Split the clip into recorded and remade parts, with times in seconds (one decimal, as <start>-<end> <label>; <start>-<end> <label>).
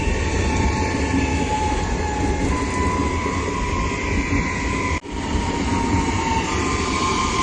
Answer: 0.0-1.3 recorded; 1.3-1.8 remade; 1.8-7.4 recorded